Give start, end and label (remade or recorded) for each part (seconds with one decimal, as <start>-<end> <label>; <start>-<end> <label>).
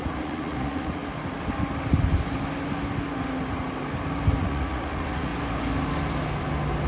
0.0-1.0 remade; 1.0-4.4 recorded; 4.4-5.3 remade; 5.3-6.9 recorded